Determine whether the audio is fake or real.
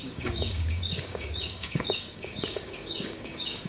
fake